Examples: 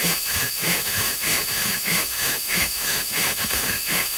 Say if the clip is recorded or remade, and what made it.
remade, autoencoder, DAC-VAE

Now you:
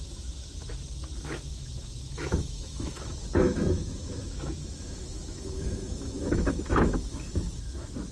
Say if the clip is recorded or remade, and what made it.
remade, autoencoder, DAC-VAE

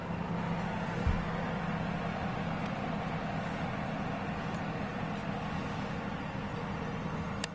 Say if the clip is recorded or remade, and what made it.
recorded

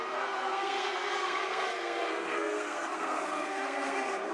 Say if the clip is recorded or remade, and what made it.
remade, codec, SNAC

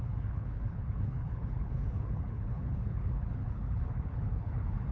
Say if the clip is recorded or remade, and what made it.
remade, codec, HILCodec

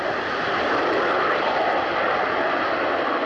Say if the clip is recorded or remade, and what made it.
recorded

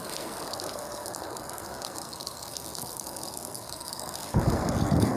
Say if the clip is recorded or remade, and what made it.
remade, codec, SNAC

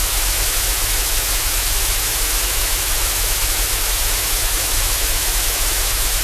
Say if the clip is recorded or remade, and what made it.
remade, autoencoder, DAC-VAE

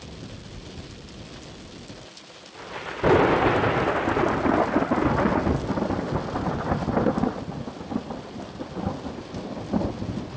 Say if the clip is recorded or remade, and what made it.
recorded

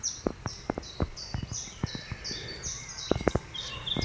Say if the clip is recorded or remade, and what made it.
recorded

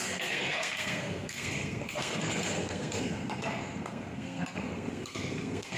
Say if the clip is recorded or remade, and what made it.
remade, codec, SNAC